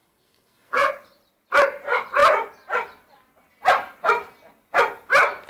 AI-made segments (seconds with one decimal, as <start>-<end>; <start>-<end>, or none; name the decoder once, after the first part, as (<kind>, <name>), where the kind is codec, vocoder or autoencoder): 0.0-0.9 (codec, SNAC)